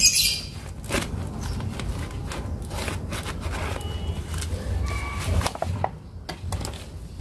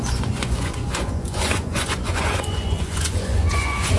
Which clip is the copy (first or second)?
second